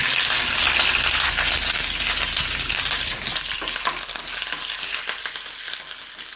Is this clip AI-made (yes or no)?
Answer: no